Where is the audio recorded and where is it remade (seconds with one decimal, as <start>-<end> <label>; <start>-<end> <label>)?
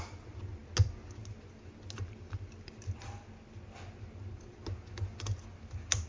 0.0-6.1 recorded